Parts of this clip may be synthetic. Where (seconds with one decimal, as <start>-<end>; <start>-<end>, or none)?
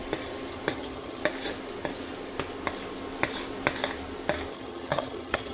0.7-1.2; 4.5-5.5